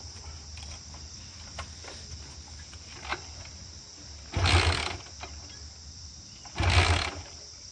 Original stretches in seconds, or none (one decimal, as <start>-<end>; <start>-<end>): 0.0-7.7